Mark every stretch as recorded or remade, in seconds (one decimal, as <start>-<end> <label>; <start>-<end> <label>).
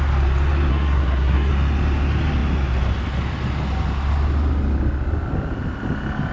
0.0-0.7 recorded; 0.7-1.5 remade; 1.5-6.3 recorded